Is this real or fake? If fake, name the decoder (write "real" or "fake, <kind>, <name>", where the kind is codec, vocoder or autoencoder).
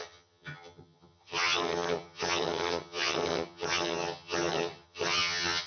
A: fake, vocoder, HiFi-GAN